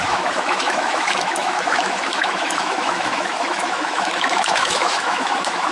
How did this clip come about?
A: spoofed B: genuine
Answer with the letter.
A